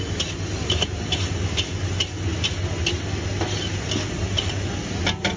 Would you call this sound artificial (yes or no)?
no